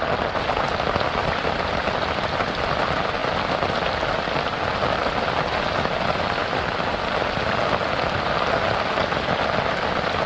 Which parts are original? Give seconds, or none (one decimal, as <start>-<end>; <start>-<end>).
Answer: 0.0-10.3